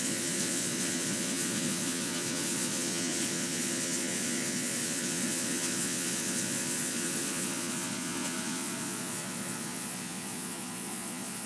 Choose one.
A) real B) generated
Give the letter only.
B